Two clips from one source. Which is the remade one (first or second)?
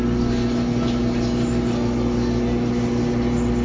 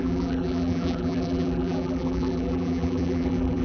second